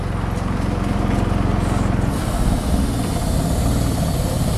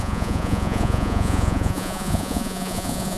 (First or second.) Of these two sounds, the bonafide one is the first